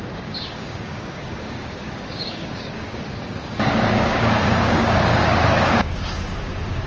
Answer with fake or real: fake